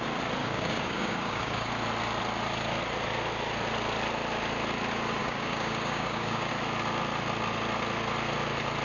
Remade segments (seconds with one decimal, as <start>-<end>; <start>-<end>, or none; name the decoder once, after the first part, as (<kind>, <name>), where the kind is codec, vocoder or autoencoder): 0.4-1.7 (codec, DAC); 5.2-6.5